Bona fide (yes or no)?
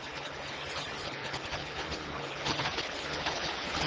no